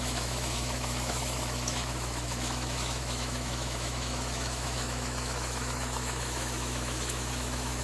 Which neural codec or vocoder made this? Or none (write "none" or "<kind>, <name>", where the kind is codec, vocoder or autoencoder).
autoencoder, DAC-VAE